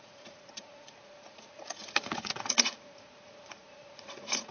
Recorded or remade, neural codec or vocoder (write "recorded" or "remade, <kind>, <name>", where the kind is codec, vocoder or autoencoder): remade, vocoder, Vocos